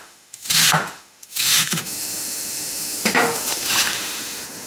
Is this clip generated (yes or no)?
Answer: yes